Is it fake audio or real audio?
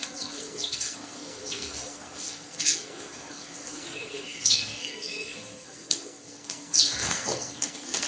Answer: fake